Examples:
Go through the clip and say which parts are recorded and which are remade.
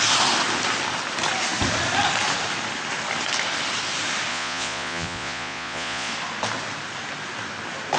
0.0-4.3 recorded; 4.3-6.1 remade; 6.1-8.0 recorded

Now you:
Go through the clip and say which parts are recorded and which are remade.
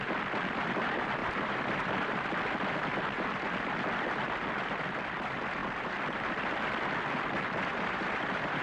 0.0-1.2 recorded; 1.2-2.2 remade; 2.2-7.7 recorded; 7.7-8.6 remade